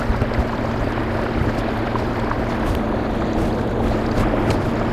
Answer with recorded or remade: recorded